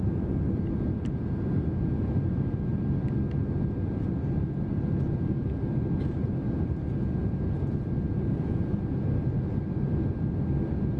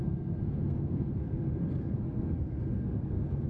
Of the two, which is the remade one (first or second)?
second